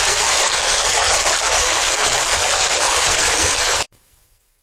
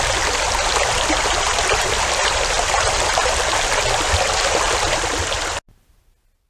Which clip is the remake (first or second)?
first